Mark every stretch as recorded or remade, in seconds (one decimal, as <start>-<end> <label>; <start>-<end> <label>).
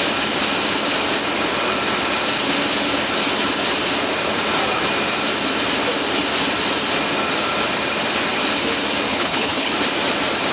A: 0.0-9.1 recorded; 9.1-9.7 remade; 9.7-10.5 recorded